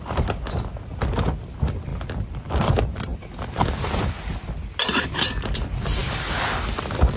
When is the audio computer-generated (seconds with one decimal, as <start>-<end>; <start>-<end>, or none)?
3.1-4.1